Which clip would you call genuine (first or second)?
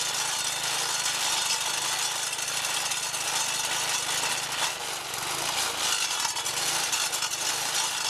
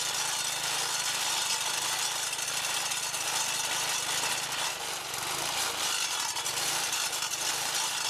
first